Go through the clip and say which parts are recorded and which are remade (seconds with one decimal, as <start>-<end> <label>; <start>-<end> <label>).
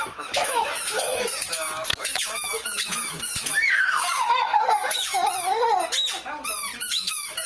0.0-5.2 remade; 5.2-6.8 recorded; 6.8-7.5 remade